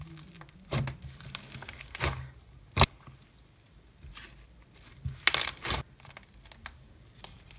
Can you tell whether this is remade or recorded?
recorded